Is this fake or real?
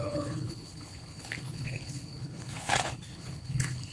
fake